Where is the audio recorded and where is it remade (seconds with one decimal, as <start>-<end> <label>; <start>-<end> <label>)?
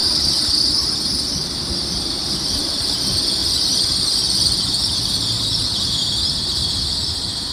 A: 0.0-0.6 remade; 0.6-2.2 recorded; 2.2-3.0 remade; 3.0-3.4 recorded; 3.4-7.5 remade